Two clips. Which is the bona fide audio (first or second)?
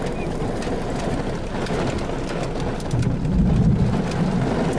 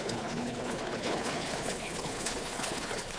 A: first